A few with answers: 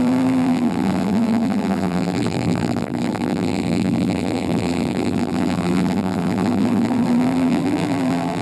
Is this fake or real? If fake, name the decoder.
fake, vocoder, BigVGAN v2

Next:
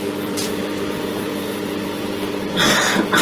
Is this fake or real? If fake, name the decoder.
fake, vocoder, BigVGAN v2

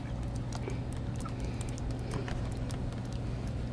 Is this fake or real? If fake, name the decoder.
real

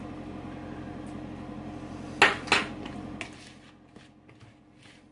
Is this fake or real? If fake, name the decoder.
real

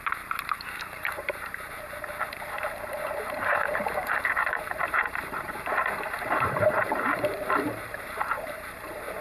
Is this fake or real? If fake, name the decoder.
fake, vocoder, BigVGAN v2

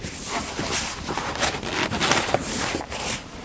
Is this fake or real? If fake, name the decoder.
real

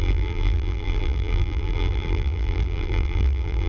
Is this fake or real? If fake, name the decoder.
fake, vocoder, BigVGAN v2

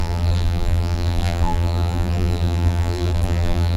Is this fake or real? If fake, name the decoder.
fake, vocoder, BigVGAN v2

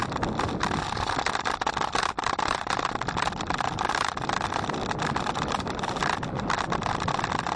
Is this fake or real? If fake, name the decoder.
fake, vocoder, BigVGAN v2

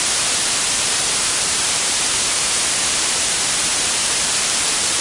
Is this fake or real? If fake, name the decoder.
fake, vocoder, BigVGAN v2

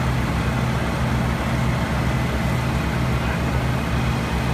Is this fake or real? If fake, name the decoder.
real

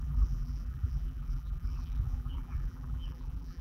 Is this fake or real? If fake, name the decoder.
fake, vocoder, BigVGAN v2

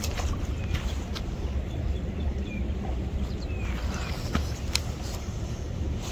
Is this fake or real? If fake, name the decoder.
fake, vocoder, BigVGAN v2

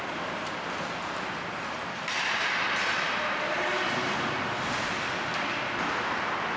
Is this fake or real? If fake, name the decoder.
real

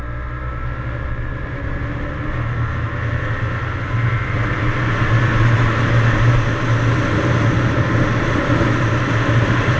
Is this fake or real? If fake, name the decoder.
real